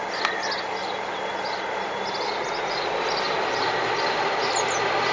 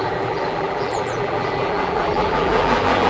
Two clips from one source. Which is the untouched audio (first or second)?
first